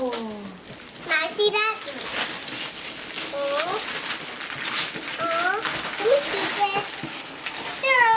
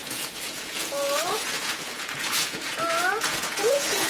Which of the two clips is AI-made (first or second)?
second